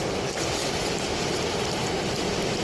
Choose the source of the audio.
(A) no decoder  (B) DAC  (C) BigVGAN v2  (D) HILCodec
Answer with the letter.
A